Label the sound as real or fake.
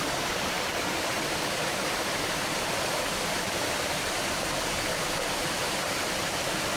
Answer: fake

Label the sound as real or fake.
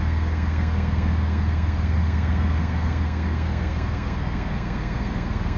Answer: fake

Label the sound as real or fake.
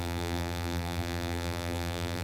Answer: fake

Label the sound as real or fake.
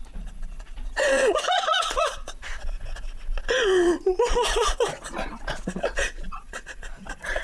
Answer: fake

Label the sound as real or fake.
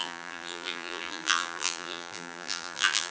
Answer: fake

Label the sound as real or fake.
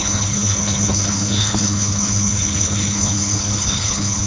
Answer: fake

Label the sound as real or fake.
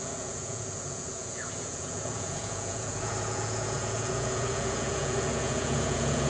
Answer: fake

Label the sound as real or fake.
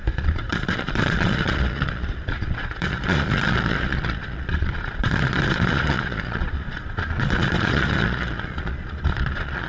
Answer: fake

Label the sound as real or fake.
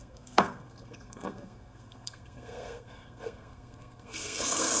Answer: fake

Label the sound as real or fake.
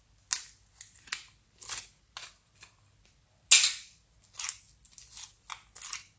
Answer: real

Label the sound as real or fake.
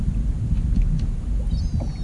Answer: real